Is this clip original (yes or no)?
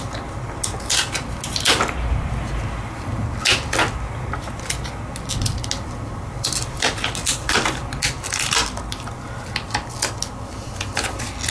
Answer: yes